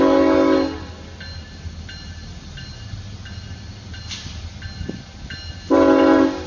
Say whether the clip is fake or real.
real